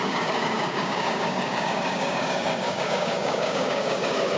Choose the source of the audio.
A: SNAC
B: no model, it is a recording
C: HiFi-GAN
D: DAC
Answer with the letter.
D